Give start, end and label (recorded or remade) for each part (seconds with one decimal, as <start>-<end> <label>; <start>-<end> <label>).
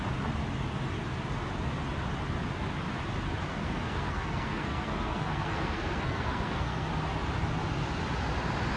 0.0-3.5 recorded; 3.5-6.9 remade; 6.9-8.8 recorded